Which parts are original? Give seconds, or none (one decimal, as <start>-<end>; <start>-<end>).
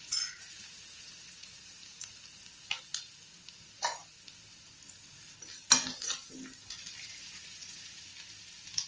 1.8-7.0; 8.1-8.9